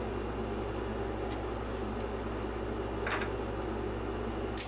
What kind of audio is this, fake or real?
real